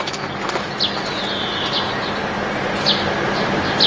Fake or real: real